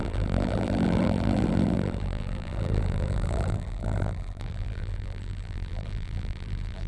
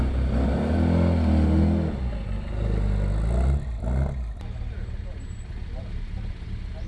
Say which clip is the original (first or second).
second